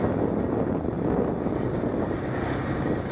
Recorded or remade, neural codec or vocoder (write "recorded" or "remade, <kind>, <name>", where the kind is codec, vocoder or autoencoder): recorded